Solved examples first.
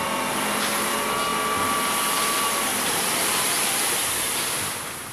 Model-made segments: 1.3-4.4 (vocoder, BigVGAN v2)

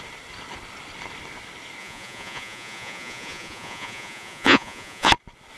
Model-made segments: 1.8-5.1 (vocoder, Vocos)

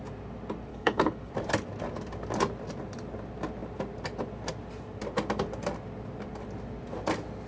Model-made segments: 0.7-1.3 (codec, HILCodec)